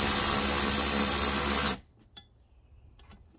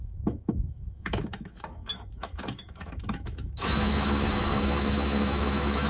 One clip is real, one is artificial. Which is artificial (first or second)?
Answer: second